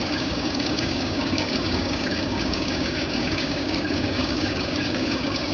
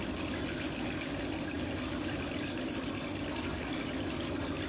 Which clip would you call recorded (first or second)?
second